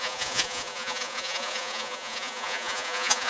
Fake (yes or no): yes